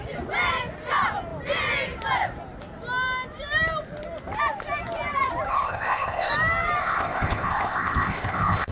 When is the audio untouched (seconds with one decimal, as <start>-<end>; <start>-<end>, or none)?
0.0-5.5; 6.3-6.8